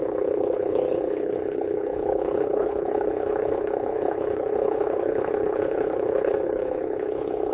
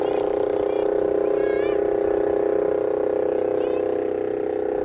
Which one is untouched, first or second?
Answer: second